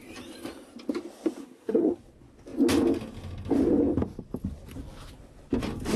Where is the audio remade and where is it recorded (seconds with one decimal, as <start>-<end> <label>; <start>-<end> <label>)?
0.0-1.4 recorded; 1.4-1.9 remade; 1.9-6.0 recorded